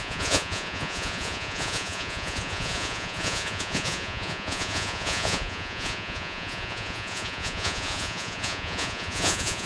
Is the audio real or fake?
fake